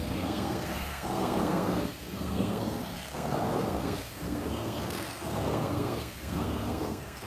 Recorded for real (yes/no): no